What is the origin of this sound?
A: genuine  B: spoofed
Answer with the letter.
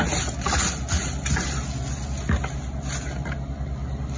A